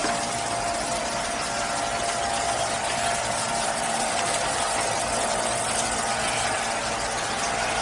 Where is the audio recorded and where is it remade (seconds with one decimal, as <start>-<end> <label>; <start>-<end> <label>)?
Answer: 0.0-7.8 recorded